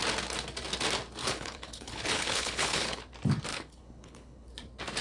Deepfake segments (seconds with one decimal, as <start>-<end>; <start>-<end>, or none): 1.2-3.0; 3.5-4.5